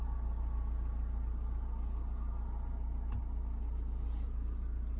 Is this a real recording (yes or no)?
yes